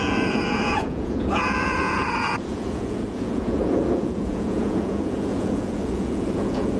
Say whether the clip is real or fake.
fake